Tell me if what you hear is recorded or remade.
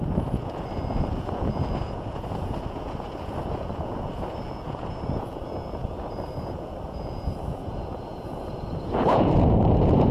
remade